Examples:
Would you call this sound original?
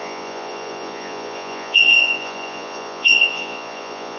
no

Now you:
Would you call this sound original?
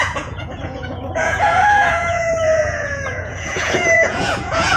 no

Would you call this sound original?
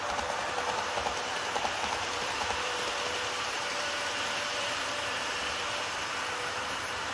no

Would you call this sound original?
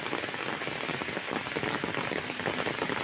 yes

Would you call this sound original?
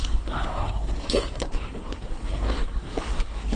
no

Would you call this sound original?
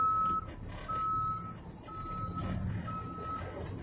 yes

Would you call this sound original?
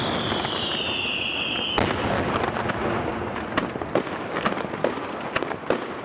yes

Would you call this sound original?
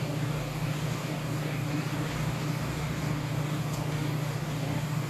no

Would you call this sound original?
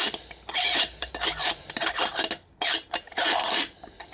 yes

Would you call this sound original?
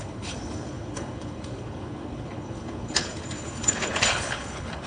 no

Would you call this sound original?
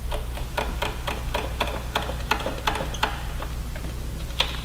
yes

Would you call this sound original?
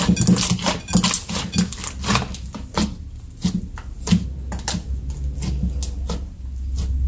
yes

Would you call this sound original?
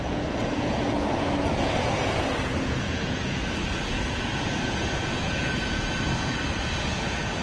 no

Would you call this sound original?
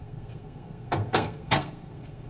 no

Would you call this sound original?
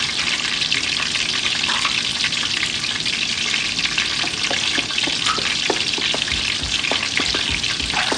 yes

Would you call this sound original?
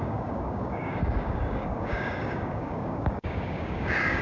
no